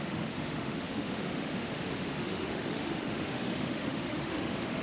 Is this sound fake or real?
fake